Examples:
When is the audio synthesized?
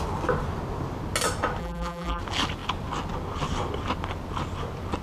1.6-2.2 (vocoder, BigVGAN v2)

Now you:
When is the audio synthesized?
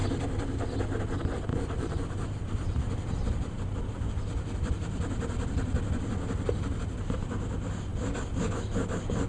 1.5-4.1 (vocoder, BigVGAN v2)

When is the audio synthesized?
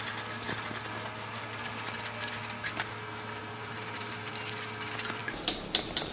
3.4-4.1 (vocoder, BigVGAN v2); 5.2-6.1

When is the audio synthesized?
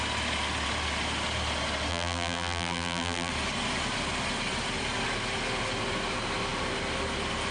1.9-3.3 (vocoder, BigVGAN v2)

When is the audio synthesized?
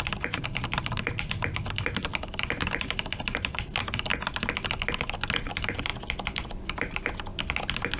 0.0-2.1 (vocoder, BigVGAN v2); 2.7-4.1; 5.5-7.3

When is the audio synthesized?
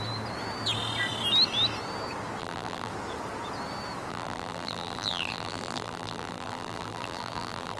2.4-2.9 (vocoder, BigVGAN v2); 4.1-7.8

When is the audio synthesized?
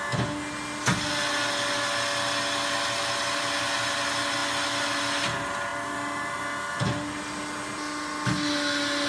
none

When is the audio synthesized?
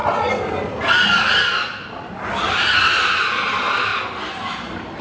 none